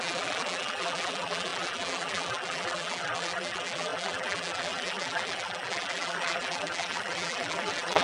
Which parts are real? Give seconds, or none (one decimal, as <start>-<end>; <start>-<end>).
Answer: none